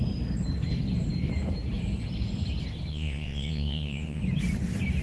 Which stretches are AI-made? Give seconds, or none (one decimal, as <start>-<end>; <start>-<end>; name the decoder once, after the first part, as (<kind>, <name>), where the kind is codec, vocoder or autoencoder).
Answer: 2.9-4.2 (vocoder, Vocos)